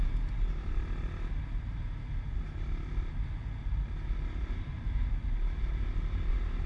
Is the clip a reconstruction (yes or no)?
no